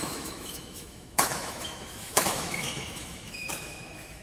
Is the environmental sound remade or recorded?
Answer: remade